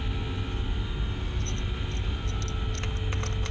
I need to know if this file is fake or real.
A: real